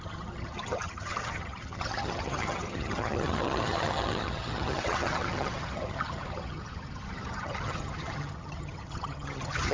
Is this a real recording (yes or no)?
no